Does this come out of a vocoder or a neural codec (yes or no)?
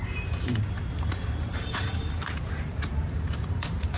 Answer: yes